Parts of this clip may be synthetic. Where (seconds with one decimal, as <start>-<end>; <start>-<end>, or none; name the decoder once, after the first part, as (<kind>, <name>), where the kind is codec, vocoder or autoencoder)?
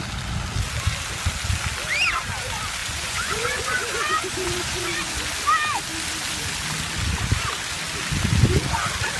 2.8-5.3 (vocoder, Vocos)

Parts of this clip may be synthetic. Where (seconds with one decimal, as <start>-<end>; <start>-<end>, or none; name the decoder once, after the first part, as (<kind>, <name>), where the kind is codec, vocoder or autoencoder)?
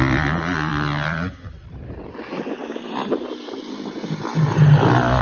none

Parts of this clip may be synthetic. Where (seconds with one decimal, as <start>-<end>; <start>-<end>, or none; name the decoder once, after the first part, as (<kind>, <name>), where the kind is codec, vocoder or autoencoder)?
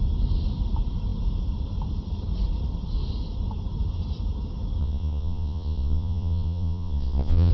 4.8-7.5 (vocoder, Vocos)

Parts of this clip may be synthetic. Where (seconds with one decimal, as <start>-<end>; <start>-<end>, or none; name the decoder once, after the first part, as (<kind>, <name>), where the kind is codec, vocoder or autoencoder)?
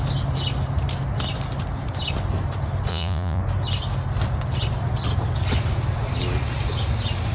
2.9-3.4 (vocoder, Vocos)